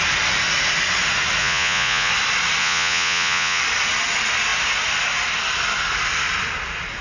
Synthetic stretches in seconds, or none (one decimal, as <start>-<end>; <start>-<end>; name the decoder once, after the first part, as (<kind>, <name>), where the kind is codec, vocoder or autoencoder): 1.4-2.1 (vocoder, Vocos); 2.6-3.6